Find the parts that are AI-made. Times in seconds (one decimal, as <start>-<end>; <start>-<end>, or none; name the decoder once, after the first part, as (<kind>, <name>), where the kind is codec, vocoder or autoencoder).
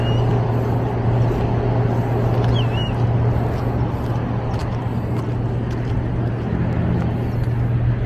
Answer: none